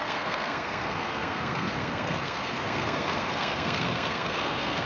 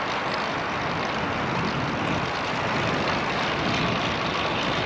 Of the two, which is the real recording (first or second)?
second